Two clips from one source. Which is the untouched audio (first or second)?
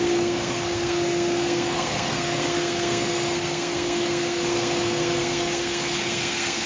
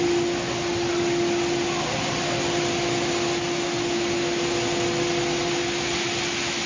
second